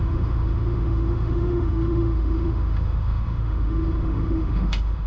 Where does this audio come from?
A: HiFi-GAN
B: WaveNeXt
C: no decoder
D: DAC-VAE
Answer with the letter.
D